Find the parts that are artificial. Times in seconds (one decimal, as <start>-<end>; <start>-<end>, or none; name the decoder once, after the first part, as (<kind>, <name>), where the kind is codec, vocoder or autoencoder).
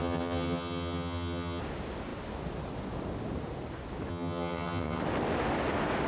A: 0.0-1.6 (vocoder, HiFi-GAN); 4.1-5.0